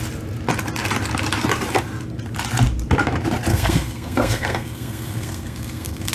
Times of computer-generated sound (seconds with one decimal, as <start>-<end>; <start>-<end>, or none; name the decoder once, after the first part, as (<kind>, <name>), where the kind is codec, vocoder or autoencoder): 3.5-6.1 (codec, SNAC)